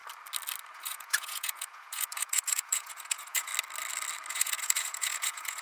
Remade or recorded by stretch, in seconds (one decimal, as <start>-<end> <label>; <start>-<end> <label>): 0.0-0.7 recorded; 0.7-3.5 remade; 3.5-4.3 recorded; 4.3-5.6 remade